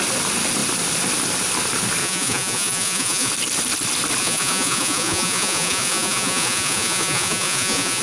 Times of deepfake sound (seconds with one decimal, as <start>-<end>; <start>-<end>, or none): 2.0-3.3; 4.2-8.0